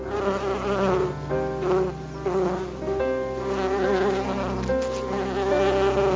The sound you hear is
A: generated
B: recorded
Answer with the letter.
B